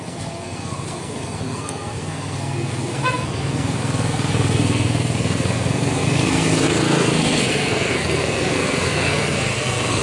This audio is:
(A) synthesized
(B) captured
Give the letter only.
A